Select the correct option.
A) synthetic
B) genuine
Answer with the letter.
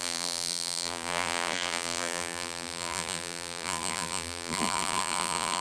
A